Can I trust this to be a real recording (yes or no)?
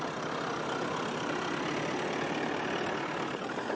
yes